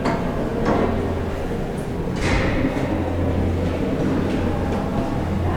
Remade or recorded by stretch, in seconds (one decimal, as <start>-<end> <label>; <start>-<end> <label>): 0.0-5.6 recorded